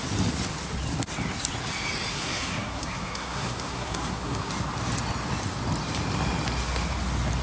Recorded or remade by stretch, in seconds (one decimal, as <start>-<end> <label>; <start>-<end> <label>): 0.0-2.1 recorded; 2.1-4.5 remade; 4.5-7.4 recorded